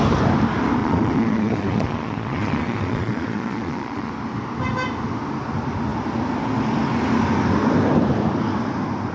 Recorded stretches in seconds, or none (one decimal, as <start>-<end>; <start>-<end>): 0.0-0.8; 4.1-9.1